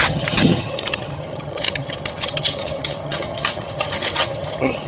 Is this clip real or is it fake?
fake